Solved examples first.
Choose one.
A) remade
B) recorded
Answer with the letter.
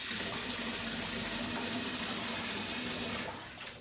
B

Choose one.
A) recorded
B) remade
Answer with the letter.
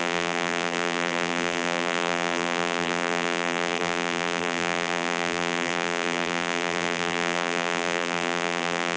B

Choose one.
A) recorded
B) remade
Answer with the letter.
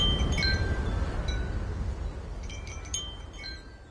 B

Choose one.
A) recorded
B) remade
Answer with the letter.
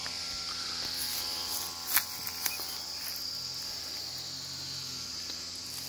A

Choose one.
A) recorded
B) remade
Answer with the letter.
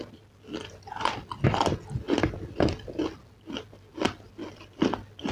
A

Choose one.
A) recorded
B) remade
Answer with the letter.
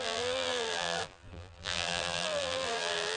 B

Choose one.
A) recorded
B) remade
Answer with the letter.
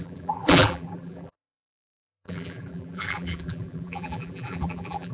B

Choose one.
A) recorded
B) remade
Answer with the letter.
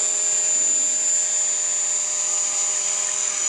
A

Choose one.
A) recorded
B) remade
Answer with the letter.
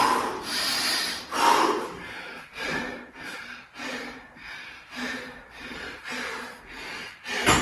B